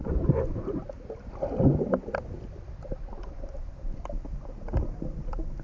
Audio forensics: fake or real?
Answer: real